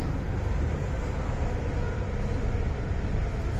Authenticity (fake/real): real